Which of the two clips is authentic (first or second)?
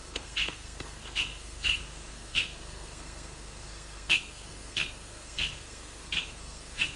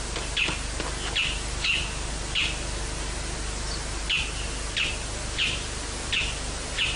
second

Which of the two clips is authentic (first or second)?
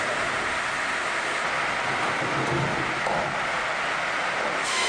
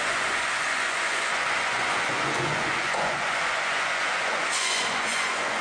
first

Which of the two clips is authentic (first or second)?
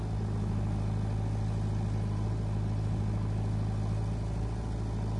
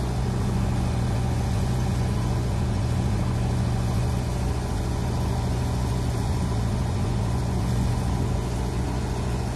first